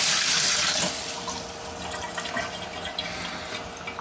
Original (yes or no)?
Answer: yes